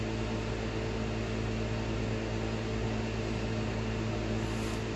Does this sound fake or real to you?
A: real